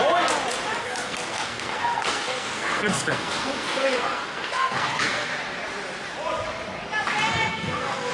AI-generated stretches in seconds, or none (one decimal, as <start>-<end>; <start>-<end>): 0.8-5.3; 7.5-8.1